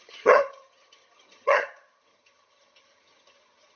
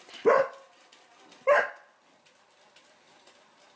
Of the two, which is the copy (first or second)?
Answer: first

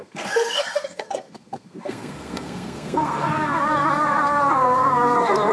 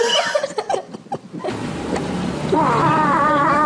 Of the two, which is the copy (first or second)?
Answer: first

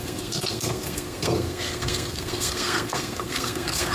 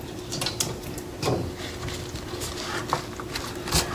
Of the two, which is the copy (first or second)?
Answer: first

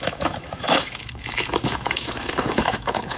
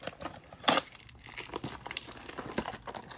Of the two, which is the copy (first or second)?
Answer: first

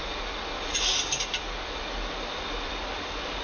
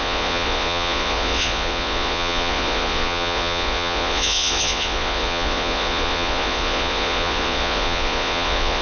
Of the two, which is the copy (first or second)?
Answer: second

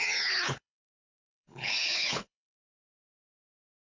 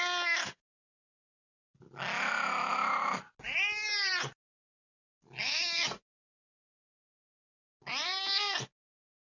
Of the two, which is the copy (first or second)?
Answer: first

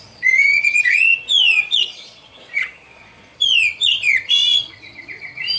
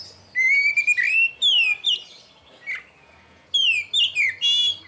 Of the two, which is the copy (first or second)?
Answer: first